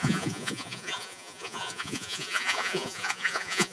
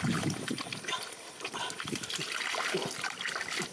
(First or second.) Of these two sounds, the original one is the second